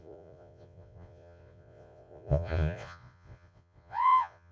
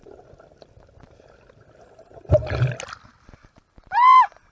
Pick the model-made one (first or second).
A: first